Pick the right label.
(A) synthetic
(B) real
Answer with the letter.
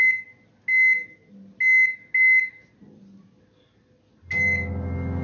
B